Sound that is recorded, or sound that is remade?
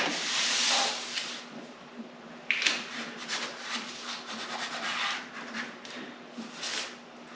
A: recorded